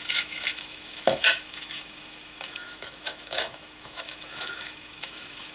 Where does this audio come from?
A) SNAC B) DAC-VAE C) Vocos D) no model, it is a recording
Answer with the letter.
B